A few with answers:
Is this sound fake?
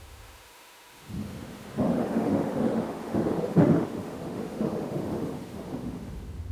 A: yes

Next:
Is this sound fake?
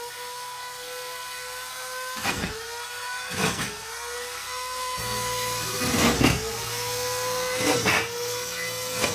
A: yes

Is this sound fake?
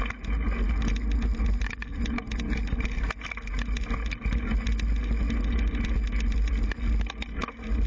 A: no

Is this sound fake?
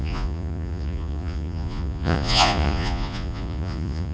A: yes